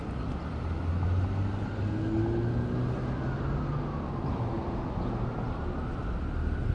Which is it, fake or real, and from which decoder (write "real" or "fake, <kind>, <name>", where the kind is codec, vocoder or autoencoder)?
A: real